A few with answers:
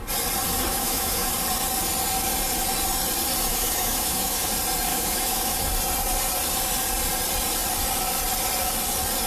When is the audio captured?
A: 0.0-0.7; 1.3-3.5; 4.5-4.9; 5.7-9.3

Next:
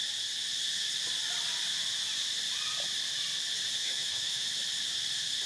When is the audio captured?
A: 0.0-3.8; 4.6-5.5